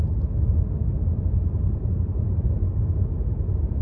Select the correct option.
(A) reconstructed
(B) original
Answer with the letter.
B